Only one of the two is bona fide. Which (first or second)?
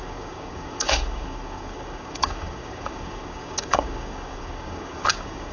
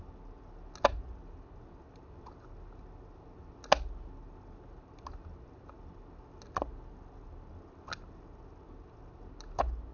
second